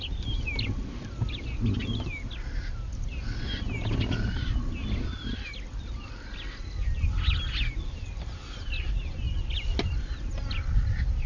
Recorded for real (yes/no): yes